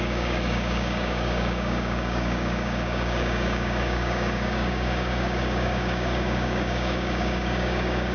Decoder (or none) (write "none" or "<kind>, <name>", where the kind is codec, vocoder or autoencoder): codec, DAC